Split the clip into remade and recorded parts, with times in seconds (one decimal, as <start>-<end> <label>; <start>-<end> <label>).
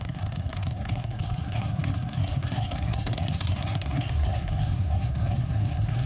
0.0-6.1 remade